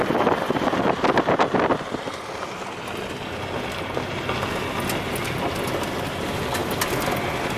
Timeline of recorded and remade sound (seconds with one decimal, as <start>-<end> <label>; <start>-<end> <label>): 0.0-7.6 recorded

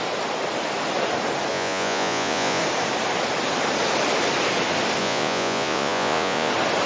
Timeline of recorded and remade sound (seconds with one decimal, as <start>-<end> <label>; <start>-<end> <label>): 0.0-1.5 recorded; 1.5-2.6 remade; 2.6-5.0 recorded; 5.0-6.5 remade; 6.5-6.9 recorded

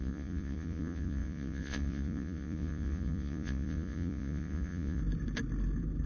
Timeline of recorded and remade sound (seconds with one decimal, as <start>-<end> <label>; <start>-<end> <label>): 0.0-5.0 remade; 5.0-6.1 recorded

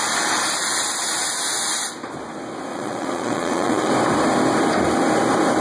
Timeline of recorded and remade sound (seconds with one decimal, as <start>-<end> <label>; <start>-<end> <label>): 0.0-2.7 recorded; 2.7-3.9 remade; 3.9-5.6 recorded